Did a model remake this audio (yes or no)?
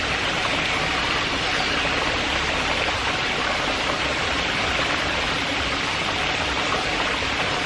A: no